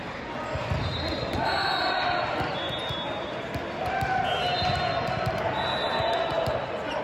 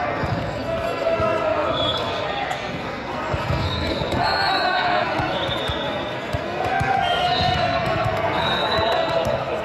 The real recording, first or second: first